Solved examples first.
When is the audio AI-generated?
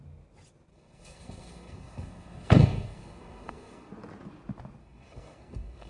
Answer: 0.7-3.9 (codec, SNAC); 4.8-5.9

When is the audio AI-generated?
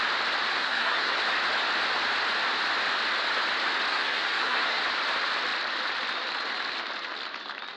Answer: 0.5-1.1 (codec, SNAC); 3.9-4.8